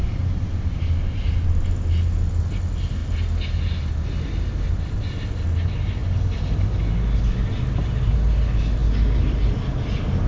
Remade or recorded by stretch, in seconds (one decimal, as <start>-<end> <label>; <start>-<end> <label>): 0.0-10.3 recorded